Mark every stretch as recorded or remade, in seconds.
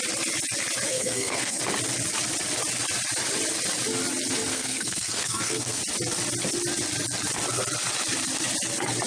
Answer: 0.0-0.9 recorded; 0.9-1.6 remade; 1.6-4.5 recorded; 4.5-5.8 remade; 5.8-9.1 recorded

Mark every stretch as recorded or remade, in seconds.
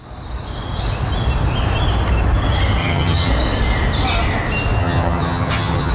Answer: 0.0-2.8 recorded; 2.8-3.3 remade; 3.3-4.8 recorded; 4.8-5.9 remade